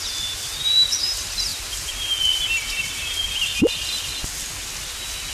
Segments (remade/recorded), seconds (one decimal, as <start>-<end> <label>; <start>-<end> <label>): 0.0-5.3 recorded